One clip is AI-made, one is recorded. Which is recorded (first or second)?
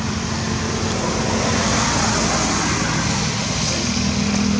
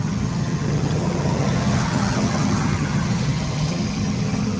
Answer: first